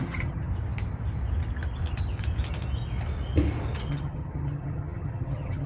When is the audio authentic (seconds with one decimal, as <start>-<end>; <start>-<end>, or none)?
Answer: 0.5-3.9